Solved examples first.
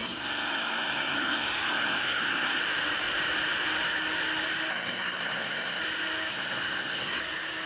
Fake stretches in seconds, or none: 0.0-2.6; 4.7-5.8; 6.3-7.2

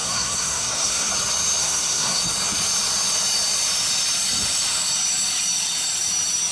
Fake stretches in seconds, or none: 0.0-1.1; 1.6-2.2